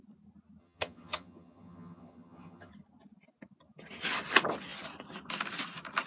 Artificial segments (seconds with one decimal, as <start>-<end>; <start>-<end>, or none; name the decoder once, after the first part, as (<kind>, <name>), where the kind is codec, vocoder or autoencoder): 0.6-2.7 (vocoder, HiFi-GAN)